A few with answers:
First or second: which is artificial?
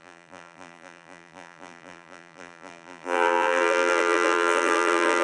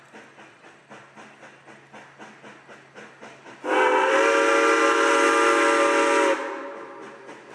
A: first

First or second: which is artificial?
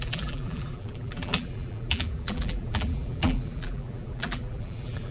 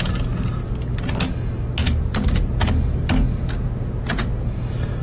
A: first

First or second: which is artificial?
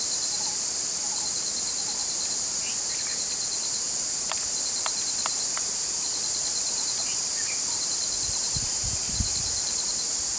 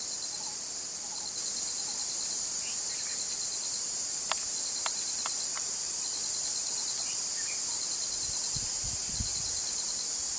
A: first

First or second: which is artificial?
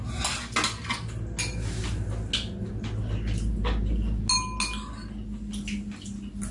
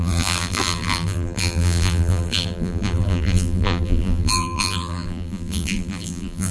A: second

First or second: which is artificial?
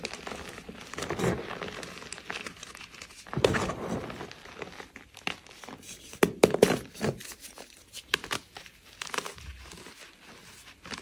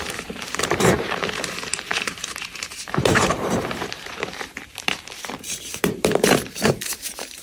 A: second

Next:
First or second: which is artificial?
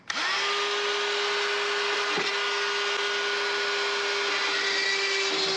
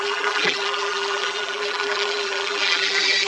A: second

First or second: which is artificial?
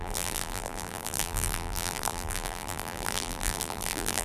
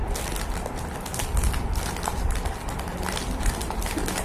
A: first